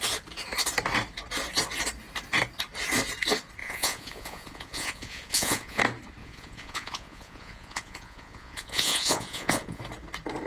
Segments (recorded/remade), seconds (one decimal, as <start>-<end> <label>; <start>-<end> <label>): 0.0-3.6 recorded; 3.6-5.8 remade; 5.8-6.2 recorded; 6.2-9.8 remade; 9.8-10.5 recorded